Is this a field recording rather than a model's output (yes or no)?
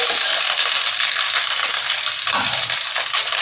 yes